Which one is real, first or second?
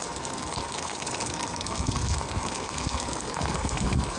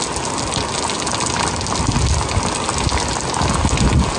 second